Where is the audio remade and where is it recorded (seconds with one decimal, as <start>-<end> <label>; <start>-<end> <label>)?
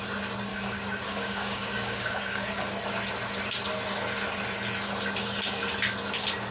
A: 0.0-0.5 recorded; 0.5-2.8 remade; 2.8-6.5 recorded